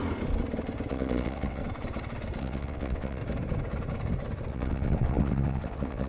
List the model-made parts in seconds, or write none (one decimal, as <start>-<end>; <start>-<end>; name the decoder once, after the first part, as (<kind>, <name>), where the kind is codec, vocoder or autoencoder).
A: 0.9-1.6 (vocoder, WaveNeXt); 2.4-3.2; 4.5-6.1